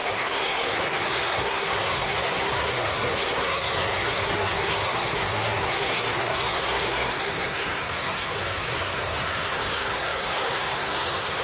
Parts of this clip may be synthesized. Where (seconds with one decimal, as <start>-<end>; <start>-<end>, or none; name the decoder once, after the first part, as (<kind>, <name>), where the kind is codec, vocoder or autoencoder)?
0.0-11.4 (codec, SNAC)